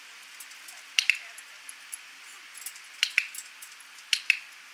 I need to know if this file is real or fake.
real